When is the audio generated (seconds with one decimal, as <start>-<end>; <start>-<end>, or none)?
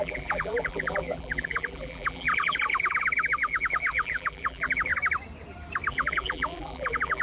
0.0-4.9; 5.9-7.2